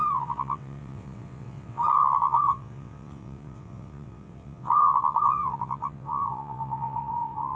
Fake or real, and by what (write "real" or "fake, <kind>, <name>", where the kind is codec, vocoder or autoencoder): fake, vocoder, WaveNeXt